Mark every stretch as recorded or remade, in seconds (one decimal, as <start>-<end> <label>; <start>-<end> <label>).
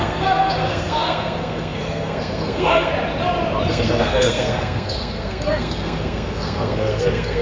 0.0-2.9 remade; 2.9-3.7 recorded; 3.7-7.4 remade